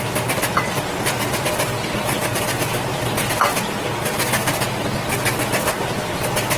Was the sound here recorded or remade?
recorded